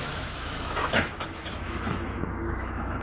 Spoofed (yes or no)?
yes